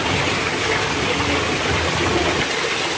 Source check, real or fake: real